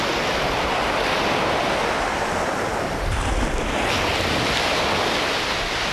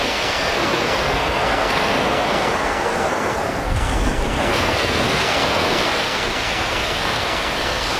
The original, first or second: first